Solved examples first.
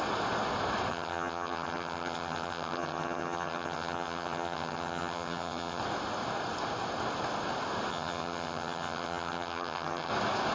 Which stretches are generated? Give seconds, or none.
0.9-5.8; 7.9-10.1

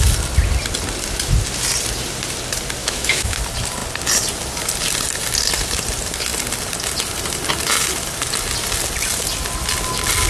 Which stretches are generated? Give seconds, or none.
2.8-3.4

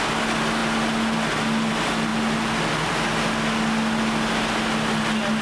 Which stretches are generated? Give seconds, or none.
none

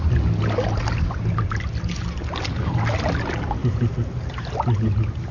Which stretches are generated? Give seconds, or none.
none

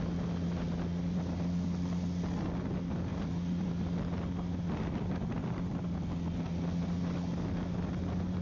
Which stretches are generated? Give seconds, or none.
3.1-3.7